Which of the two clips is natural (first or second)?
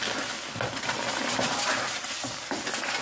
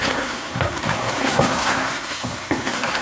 first